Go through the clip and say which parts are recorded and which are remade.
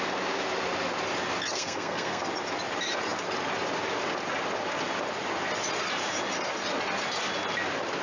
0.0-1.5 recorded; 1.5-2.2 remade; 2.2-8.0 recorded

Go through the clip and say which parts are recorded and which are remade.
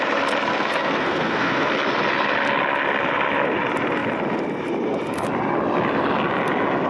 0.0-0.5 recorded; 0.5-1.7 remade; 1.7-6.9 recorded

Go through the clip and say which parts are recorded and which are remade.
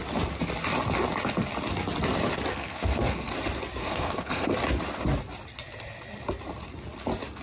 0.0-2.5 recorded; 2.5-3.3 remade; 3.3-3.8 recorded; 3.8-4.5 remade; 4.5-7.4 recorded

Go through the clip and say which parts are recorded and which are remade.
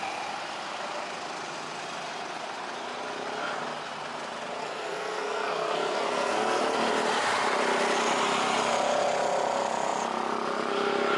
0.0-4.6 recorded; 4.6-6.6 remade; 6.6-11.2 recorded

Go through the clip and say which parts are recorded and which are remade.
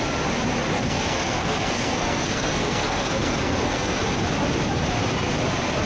0.0-0.7 recorded; 0.7-4.0 remade; 4.0-5.9 recorded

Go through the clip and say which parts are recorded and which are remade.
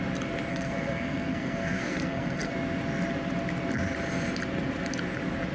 0.0-0.5 recorded; 0.5-2.5 remade; 2.5-5.5 recorded